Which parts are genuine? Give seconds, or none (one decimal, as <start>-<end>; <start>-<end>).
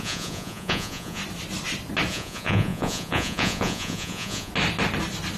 1.2-2.1; 4.5-5.4